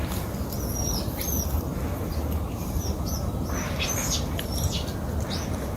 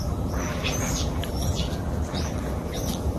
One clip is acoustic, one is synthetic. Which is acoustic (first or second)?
first